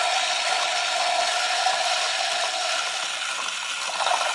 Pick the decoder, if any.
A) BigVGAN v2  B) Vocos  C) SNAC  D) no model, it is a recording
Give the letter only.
D